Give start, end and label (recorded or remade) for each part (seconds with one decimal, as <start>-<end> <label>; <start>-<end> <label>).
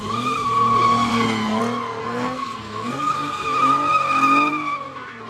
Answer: 0.0-1.1 recorded; 1.1-1.6 remade; 1.6-2.0 recorded; 2.0-3.1 remade; 3.1-5.3 recorded